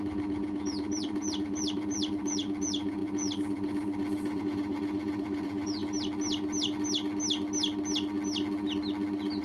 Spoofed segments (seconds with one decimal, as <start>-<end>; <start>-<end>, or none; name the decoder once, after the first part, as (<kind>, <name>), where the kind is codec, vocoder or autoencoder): 0.0-5.8 (vocoder, Vocos)